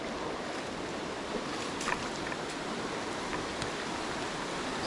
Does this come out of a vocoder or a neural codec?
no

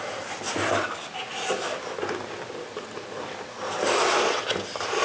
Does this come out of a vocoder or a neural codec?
no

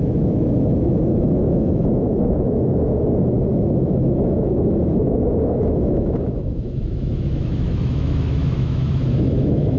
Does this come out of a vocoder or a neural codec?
yes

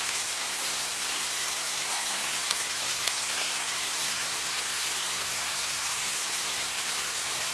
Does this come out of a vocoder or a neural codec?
yes